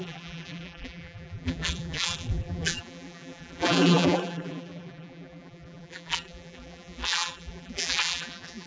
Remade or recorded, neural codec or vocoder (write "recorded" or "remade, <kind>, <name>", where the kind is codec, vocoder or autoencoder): remade, vocoder, BigVGAN v2